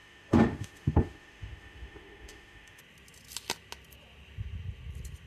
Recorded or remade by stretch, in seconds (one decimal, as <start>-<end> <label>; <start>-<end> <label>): 0.0-2.8 remade; 2.8-5.3 recorded

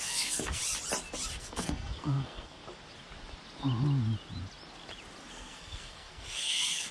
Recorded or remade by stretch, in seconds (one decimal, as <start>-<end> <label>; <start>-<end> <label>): 0.0-0.6 remade; 0.6-1.4 recorded; 1.4-2.6 remade; 2.6-5.3 recorded; 5.3-6.9 remade

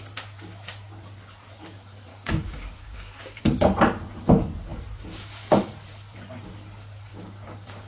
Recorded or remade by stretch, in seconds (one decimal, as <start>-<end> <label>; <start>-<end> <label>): 0.0-2.1 recorded; 2.1-3.4 remade; 3.4-7.1 recorded; 7.1-7.9 remade

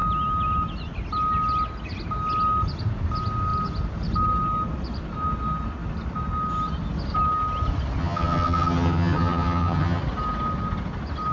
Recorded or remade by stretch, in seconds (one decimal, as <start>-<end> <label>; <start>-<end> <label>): 0.0-8.0 recorded; 8.0-10.0 remade; 10.0-11.3 recorded

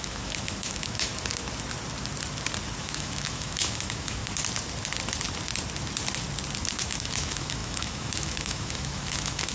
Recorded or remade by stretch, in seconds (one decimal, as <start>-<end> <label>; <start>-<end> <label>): 0.0-1.1 remade; 1.1-2.8 recorded; 2.8-4.2 remade; 4.2-6.6 recorded; 6.6-9.5 remade

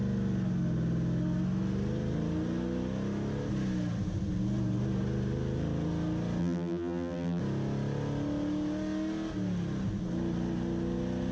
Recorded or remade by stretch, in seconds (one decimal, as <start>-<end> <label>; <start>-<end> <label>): 0.0-6.4 recorded; 6.4-7.4 remade; 7.4-11.3 recorded

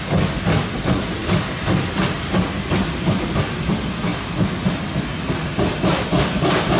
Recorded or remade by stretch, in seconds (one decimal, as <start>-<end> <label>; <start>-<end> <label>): 0.0-6.8 recorded

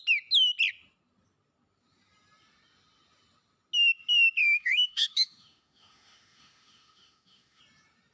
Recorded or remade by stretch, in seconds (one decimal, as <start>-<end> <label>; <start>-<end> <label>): 0.0-4.4 recorded; 4.4-7.6 remade; 7.6-8.1 recorded